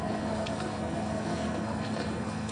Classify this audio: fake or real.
fake